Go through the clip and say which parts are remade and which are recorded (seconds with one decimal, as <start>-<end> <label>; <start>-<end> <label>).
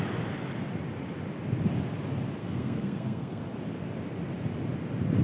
0.0-2.4 recorded; 2.4-3.4 remade; 3.4-5.2 recorded